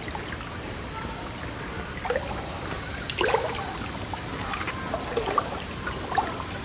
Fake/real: real